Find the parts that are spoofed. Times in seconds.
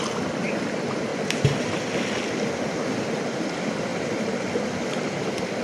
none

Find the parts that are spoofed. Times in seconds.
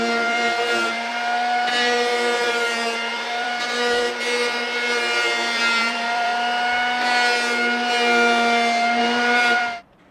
0.0-6.3; 9.0-10.1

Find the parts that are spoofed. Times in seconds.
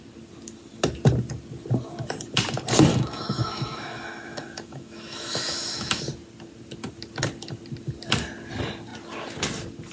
2.9-6.0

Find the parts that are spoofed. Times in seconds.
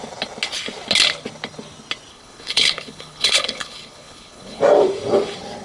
2.1-4.6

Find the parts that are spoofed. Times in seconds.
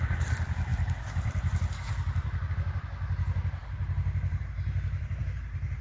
0.7-2.5; 3.6-5.2